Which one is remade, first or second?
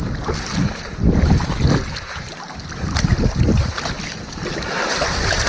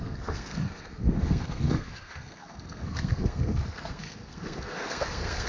second